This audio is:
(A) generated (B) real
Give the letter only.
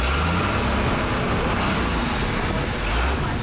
B